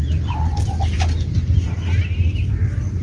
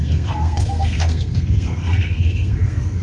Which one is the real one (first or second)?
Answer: first